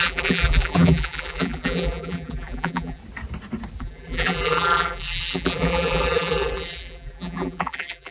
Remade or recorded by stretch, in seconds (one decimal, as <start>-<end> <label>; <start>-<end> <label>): 0.0-3.0 remade; 3.0-3.8 recorded; 3.8-8.1 remade